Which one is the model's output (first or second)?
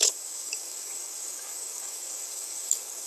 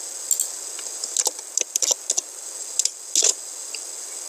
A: first